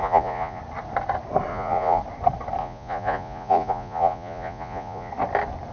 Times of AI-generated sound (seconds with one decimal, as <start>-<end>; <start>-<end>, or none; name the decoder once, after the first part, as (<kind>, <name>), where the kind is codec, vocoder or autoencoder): 0.0-0.6 (vocoder, Vocos); 1.5-2.0; 2.6-5.1